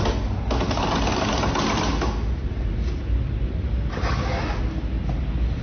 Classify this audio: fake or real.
real